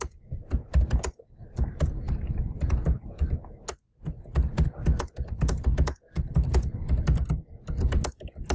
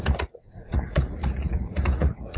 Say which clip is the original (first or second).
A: first